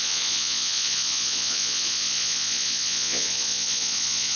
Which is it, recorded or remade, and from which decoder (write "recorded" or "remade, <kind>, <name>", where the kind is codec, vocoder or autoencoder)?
remade, vocoder, Vocos